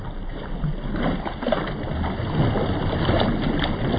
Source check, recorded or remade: recorded